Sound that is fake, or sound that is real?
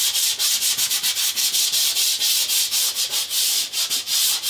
real